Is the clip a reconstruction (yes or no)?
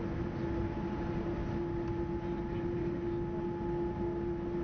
no